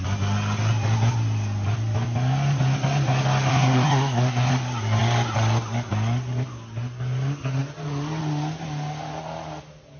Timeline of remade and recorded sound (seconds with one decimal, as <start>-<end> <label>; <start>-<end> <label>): 0.0-3.5 recorded; 3.5-4.5 remade; 4.5-10.0 recorded